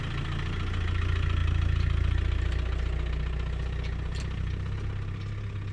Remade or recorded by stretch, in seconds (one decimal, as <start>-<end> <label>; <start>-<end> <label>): 0.0-5.7 recorded